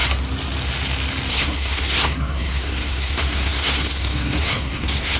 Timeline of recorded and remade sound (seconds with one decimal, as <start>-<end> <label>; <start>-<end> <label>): 0.0-1.3 recorded; 1.3-5.2 remade